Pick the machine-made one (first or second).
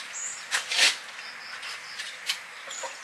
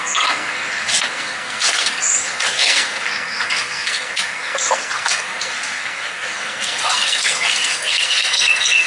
second